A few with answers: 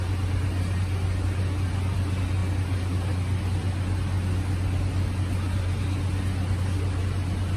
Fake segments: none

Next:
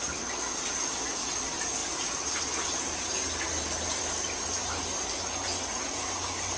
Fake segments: 1.8-4.8

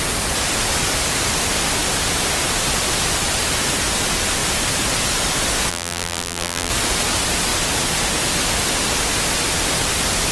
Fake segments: 5.7-6.7

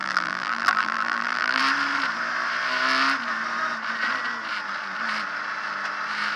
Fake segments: 0.0-1.6

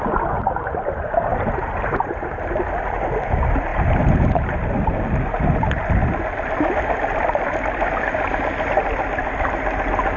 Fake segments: 1.3-2.0

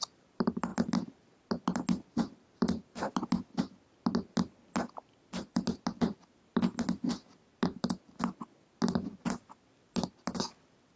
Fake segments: none

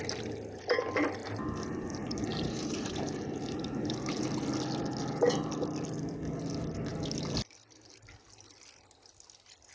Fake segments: 1.2-4.2

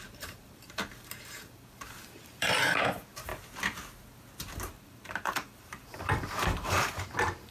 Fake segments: 0.0-3.3; 4.7-7.5